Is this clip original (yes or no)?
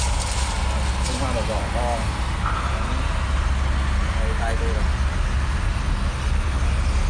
yes